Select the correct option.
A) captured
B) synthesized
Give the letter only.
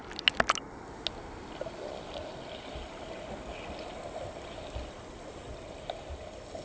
A